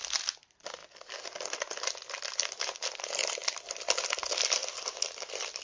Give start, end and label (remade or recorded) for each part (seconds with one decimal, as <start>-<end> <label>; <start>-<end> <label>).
0.0-5.6 recorded